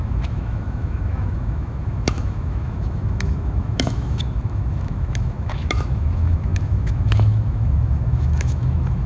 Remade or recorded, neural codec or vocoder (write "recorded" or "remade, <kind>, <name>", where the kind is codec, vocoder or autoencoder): remade, autoencoder, DAC-VAE